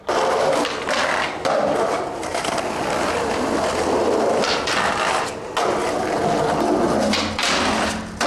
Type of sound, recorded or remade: recorded